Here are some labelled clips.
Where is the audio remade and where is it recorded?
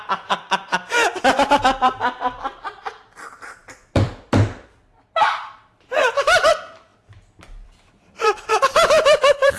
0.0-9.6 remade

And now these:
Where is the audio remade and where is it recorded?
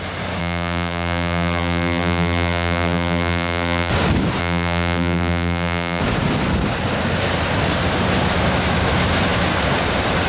0.0-0.4 recorded; 0.4-3.9 remade; 3.9-4.4 recorded; 4.4-6.0 remade; 6.0-10.3 recorded